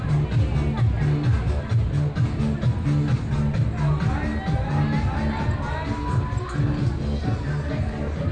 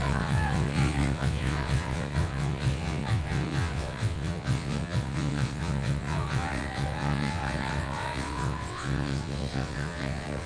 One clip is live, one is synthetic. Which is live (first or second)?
first